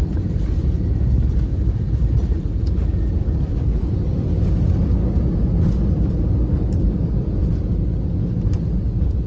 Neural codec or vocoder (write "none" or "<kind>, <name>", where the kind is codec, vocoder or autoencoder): none